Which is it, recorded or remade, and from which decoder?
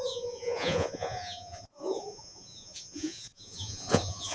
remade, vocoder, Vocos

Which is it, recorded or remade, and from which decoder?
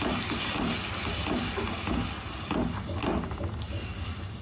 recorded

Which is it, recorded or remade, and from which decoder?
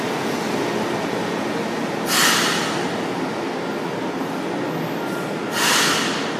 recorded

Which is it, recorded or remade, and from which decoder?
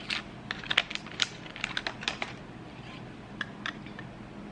recorded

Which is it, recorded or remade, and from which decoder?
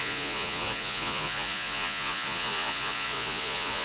remade, vocoder, Vocos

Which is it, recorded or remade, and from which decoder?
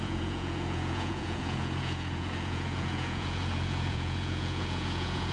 remade, vocoder, Vocos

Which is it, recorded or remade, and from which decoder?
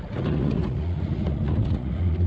remade, vocoder, Vocos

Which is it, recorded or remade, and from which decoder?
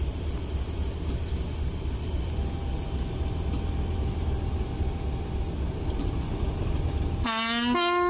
recorded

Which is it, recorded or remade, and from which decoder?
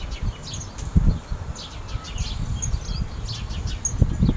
recorded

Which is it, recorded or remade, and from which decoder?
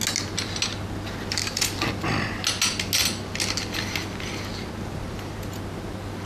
recorded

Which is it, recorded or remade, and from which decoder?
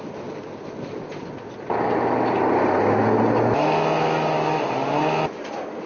recorded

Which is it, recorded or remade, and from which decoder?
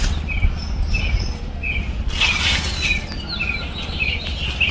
recorded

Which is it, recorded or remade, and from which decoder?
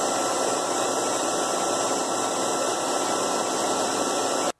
recorded